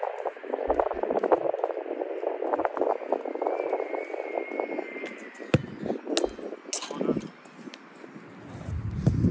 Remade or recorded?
recorded